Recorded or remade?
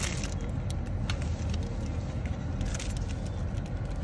recorded